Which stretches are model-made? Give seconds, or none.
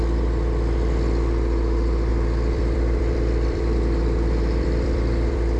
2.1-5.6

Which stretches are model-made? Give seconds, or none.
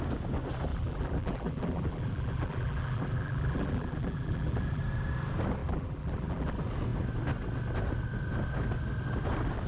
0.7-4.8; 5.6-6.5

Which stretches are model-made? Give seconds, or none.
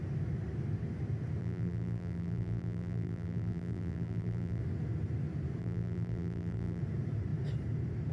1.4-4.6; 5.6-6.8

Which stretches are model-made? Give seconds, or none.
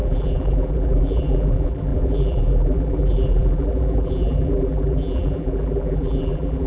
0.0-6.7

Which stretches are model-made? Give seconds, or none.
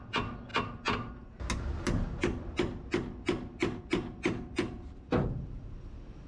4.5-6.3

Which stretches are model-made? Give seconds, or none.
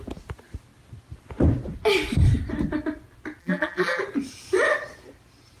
3.4-4.0